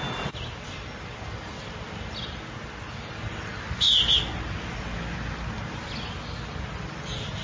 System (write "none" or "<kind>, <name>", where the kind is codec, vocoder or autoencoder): none